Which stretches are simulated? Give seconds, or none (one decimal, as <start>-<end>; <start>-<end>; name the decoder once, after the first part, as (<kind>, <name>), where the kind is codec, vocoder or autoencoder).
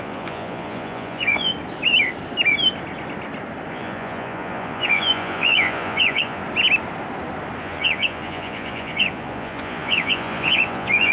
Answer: 0.0-1.5 (vocoder, Vocos); 3.7-6.4; 7.6-11.1